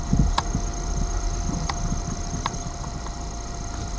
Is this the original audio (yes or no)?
yes